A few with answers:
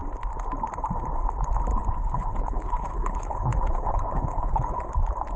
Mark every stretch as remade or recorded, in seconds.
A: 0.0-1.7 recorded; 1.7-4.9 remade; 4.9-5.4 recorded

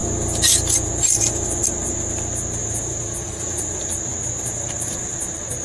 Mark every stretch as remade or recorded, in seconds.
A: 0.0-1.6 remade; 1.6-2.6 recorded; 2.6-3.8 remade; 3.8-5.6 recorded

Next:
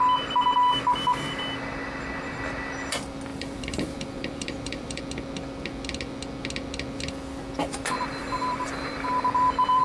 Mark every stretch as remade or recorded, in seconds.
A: 0.0-3.3 recorded; 3.3-5.0 remade; 5.0-7.6 recorded; 7.6-9.8 remade